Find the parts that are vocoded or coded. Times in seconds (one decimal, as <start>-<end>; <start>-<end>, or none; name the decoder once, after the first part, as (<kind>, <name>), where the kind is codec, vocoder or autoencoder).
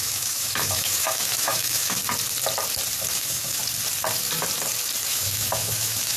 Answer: 0.0-2.0 (autoencoder, DAC-VAE); 3.1-3.6; 5.1-6.2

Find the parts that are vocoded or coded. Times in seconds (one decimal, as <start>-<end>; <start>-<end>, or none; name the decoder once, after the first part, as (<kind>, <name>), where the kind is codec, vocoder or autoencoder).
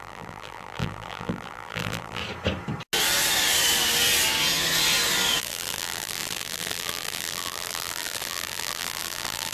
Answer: 0.0-2.2 (vocoder, BigVGAN v2); 5.4-9.5